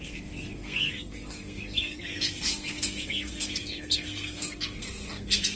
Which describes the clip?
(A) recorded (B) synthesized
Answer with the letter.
B